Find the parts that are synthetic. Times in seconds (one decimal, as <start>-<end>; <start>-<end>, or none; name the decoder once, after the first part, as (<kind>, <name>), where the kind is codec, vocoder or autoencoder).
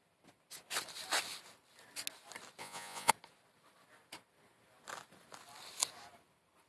2.6-3.1 (vocoder, Vocos)